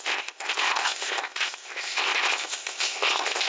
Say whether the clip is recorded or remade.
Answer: remade